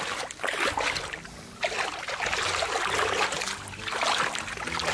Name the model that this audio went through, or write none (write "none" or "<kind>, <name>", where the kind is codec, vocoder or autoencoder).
none